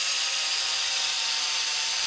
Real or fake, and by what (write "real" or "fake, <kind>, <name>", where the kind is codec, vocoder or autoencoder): fake, vocoder, BigVGAN v2